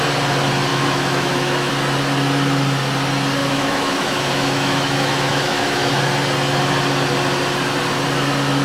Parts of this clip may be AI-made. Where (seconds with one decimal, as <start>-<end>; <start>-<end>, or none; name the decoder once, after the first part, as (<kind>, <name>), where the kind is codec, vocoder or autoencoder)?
0.7-1.7 (autoencoder, DAC-VAE); 3.4-5.9